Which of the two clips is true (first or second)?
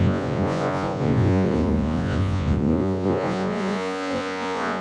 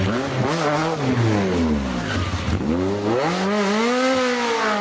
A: second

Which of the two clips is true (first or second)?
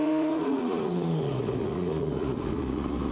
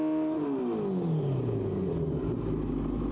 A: second